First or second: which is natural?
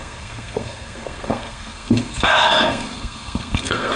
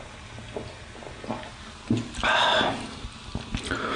second